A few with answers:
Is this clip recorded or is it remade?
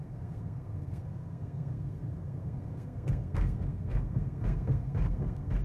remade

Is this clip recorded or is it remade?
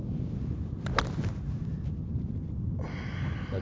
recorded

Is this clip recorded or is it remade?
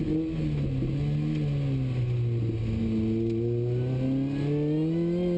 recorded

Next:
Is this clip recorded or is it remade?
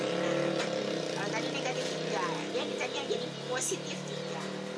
recorded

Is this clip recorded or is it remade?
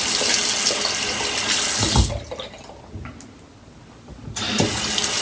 recorded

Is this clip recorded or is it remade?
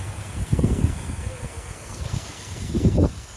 remade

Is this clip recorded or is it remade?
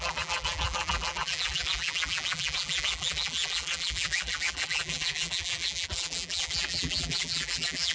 remade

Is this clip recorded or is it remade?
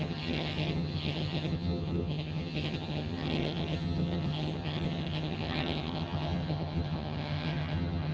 remade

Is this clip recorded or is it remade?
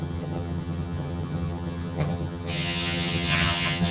remade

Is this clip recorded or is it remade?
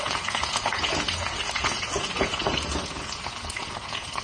remade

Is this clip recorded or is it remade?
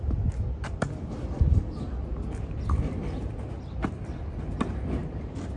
remade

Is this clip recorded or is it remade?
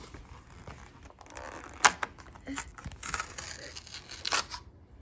recorded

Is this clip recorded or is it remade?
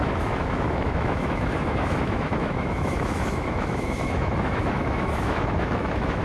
remade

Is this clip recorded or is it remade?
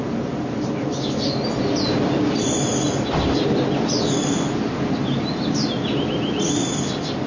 recorded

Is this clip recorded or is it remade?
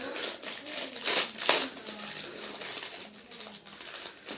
recorded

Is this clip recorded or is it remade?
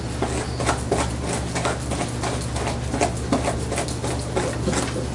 recorded